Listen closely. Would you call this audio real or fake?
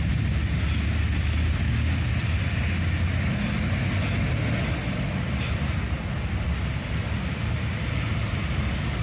real